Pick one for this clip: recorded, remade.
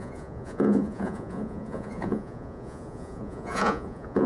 remade